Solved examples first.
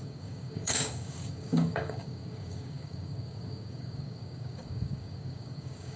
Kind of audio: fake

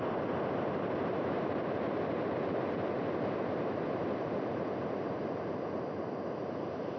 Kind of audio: real